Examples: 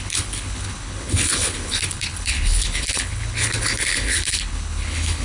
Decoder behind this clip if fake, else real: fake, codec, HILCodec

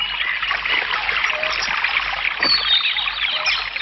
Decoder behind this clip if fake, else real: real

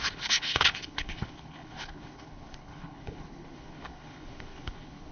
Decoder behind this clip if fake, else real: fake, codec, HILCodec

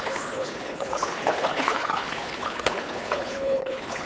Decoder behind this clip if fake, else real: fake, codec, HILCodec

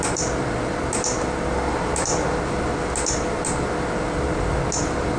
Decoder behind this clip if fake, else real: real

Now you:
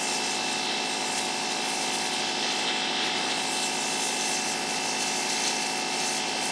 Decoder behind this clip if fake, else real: real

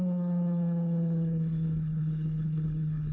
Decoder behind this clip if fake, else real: fake, codec, HILCodec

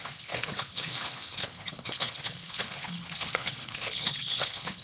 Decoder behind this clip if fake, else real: fake, codec, HILCodec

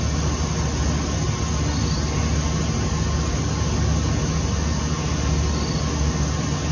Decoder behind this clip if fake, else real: real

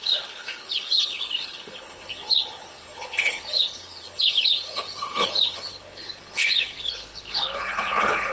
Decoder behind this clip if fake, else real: fake, codec, HILCodec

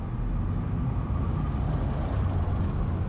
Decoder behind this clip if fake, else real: real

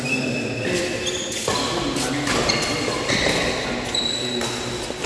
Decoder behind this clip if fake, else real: real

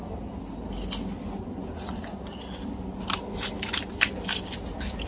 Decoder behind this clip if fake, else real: real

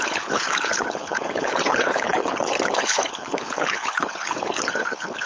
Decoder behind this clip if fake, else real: fake, codec, HILCodec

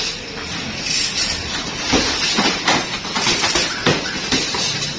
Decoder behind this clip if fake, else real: real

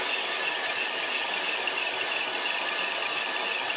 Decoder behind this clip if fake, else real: real